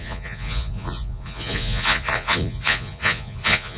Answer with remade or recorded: remade